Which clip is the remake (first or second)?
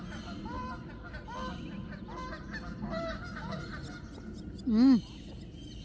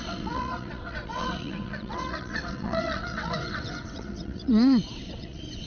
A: second